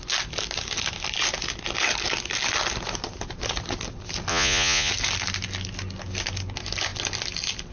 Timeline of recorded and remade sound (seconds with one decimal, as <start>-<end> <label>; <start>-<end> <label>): 0.0-4.3 recorded; 4.3-4.9 remade; 4.9-7.7 recorded